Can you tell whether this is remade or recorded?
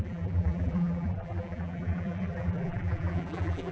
remade